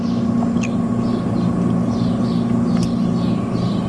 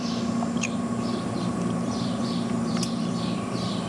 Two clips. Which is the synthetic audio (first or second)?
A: second